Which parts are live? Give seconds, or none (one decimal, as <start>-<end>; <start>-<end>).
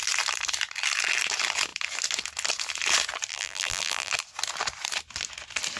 0.0-3.3; 4.1-5.8